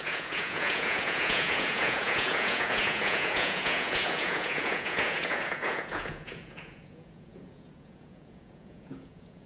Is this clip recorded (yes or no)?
no